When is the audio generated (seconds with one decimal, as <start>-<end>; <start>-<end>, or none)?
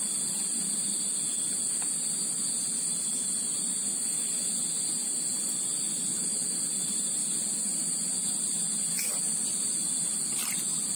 none